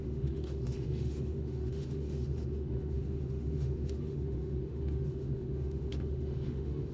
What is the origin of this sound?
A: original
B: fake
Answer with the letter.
B